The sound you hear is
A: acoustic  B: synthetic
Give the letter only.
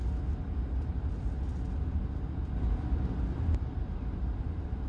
A